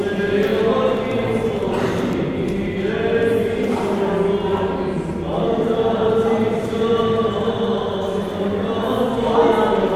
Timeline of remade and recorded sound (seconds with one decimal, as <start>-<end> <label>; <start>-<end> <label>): 0.0-0.5 recorded; 0.5-2.2 remade; 2.2-5.3 recorded; 5.3-7.9 remade; 7.9-10.0 recorded